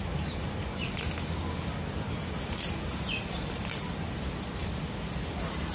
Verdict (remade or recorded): recorded